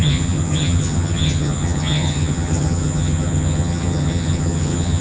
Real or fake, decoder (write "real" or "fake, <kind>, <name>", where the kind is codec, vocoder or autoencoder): fake, vocoder, HiFi-GAN